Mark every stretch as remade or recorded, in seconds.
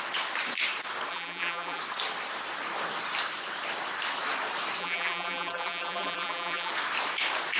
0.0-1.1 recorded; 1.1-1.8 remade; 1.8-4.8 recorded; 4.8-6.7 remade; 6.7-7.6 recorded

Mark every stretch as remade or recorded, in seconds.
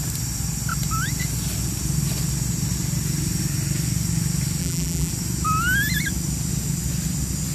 0.0-4.6 recorded; 4.6-5.1 remade; 5.1-7.5 recorded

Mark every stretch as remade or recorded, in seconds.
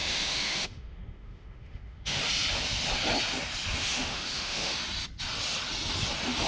0.0-2.2 remade; 2.2-3.8 recorded; 3.8-4.8 remade; 4.8-6.5 recorded